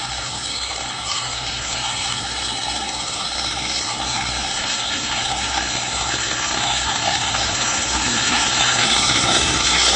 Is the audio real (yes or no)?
no